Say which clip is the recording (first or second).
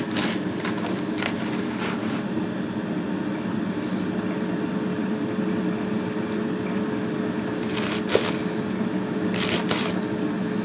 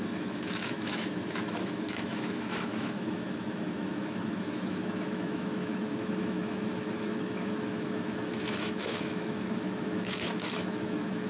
first